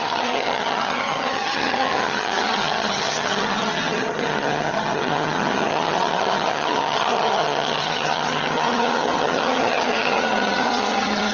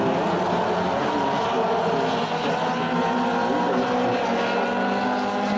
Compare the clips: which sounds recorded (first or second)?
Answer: second